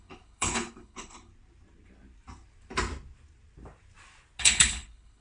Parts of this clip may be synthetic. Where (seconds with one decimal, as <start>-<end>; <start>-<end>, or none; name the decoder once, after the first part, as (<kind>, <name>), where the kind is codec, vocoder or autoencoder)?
0.0-1.3 (codec, HILCodec); 4.4-5.2